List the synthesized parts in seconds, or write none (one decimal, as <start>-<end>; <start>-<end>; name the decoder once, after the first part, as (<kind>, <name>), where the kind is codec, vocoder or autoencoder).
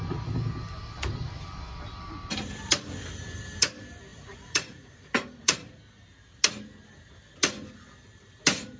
4.1-5.7 (vocoder, Vocos)